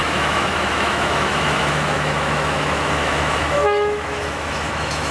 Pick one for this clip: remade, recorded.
remade